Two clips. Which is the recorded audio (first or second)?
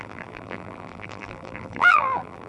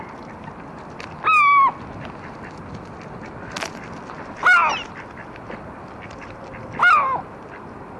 second